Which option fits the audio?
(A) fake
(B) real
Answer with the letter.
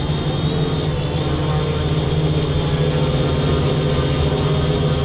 B